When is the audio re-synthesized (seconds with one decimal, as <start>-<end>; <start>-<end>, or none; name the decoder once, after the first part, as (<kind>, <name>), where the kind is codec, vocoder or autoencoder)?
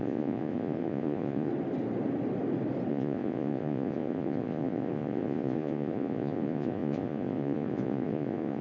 0.0-1.5 (vocoder, Vocos); 2.9-8.6